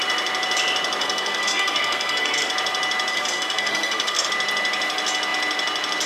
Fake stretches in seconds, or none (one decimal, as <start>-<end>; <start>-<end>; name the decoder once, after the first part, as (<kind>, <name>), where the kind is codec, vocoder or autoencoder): 1.0-2.5 (codec, SNAC); 3.1-4.3